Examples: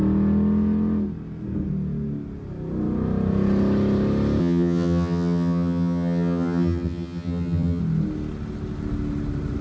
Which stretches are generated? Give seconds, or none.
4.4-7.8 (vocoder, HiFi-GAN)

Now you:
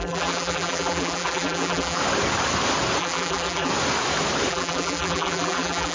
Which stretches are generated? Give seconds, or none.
0.0-2.0 (vocoder, BigVGAN v2); 3.0-3.7; 4.5-5.9

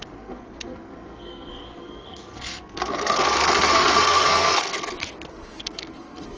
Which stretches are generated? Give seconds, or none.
0.0-4.7 (codec, SNAC); 5.3-6.4

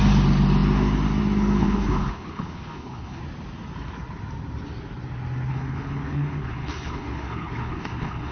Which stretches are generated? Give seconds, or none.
1.6-3.2 (codec, HILCodec); 5.5-8.3

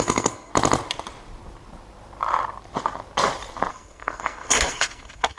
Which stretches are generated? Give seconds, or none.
0.0-0.5 (codec, SNAC); 3.7-5.4